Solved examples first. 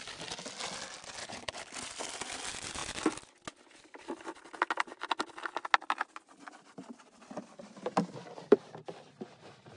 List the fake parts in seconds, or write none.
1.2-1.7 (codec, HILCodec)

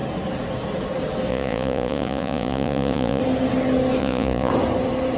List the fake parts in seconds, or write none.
1.3-3.2 (vocoder, Vocos); 4.0-4.5

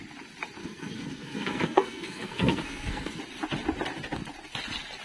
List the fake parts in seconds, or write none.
0.6-3.2 (codec, SNAC)

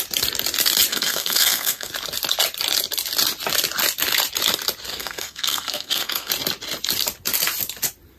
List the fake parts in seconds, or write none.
0.9-1.9 (codec, SNAC); 4.9-6.3

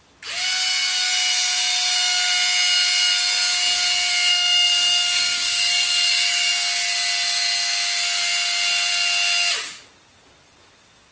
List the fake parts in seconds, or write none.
4.3-6.5 (codec, DAC)

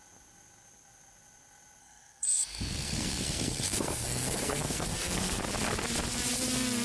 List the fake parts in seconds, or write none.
1.8-5.4 (codec, SNAC)

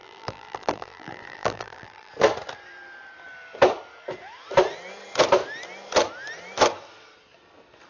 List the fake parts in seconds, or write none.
0.0-2.1 (vocoder, BigVGAN v2)